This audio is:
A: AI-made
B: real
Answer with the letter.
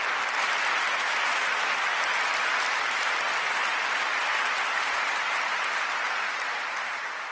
B